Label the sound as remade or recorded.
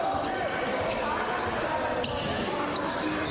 recorded